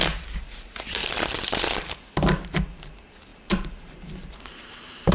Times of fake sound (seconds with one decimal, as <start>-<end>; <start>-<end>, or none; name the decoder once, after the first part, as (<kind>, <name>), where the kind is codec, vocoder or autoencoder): 0.0-1.0 (vocoder, BigVGAN v2); 2.8-5.1